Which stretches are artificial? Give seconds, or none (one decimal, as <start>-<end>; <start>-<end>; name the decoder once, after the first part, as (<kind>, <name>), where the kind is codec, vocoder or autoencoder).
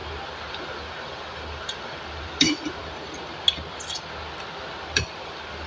0.5-2.8 (vocoder, BigVGAN v2); 4.7-5.7